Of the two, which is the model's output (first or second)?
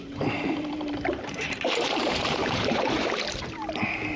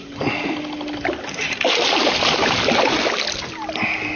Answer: first